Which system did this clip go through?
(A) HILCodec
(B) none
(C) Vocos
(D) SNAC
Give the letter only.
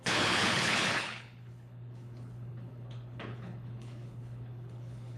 A